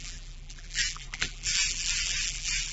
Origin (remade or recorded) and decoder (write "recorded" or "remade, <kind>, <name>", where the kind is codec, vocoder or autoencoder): remade, vocoder, BigVGAN v2